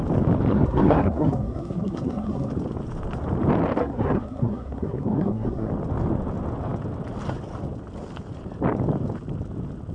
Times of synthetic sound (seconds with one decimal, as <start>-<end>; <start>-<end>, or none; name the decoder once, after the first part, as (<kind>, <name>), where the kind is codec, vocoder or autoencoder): 0.5-2.5 (codec, SNAC); 3.8-5.7